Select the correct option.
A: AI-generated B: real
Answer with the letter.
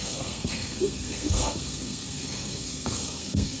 A